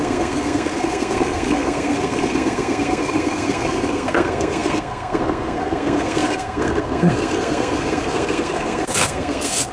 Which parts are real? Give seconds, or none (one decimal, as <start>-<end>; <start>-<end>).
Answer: none